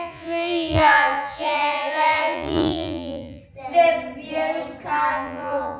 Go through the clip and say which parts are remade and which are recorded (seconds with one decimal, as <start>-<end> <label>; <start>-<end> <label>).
0.0-3.4 remade; 3.4-5.1 recorded; 5.1-5.8 remade